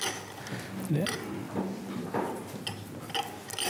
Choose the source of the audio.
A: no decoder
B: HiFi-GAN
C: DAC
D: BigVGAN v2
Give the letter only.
A